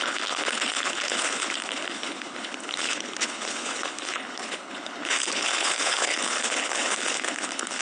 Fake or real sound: fake